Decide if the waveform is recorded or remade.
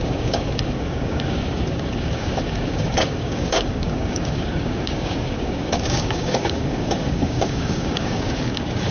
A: remade